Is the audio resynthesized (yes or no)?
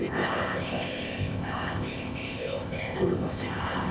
yes